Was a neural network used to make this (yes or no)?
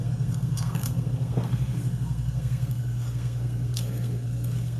yes